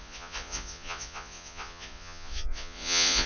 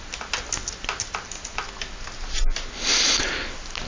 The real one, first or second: second